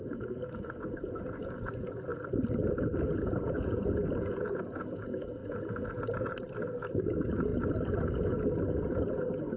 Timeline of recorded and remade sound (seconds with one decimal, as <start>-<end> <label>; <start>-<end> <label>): 0.0-2.1 remade; 2.1-3.0 recorded; 3.0-5.4 remade; 5.4-7.0 recorded; 7.0-7.5 remade; 7.5-8.8 recorded; 8.8-9.6 remade